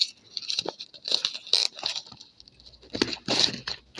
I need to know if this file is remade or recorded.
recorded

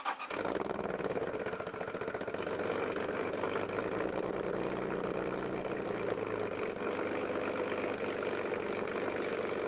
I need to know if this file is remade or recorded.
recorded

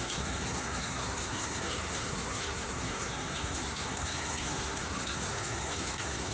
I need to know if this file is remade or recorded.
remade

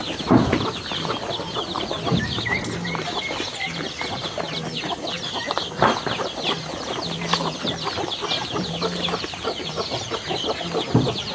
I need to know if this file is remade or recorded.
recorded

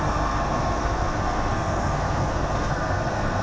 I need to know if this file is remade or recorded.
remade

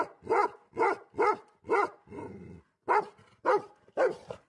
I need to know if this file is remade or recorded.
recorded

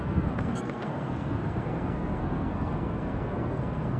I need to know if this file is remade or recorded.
remade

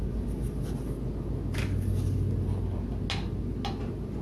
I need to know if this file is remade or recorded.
recorded